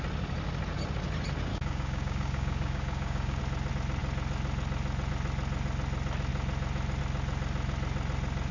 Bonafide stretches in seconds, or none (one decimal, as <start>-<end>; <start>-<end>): 0.0-1.5; 3.4-8.5